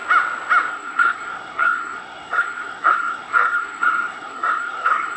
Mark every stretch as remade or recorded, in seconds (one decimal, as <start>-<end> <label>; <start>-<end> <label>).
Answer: 0.0-0.7 recorded; 0.7-5.2 remade